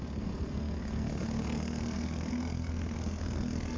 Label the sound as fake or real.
fake